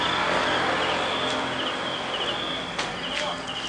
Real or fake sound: real